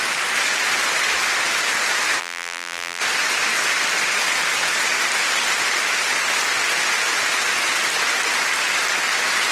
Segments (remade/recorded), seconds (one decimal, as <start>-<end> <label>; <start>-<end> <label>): 0.0-2.2 recorded; 2.2-3.0 remade; 3.0-9.5 recorded